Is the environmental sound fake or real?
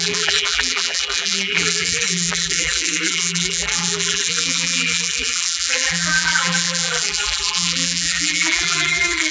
fake